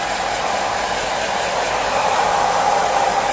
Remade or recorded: recorded